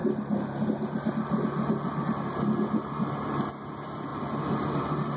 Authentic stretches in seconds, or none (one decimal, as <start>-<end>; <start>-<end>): 0.0-5.2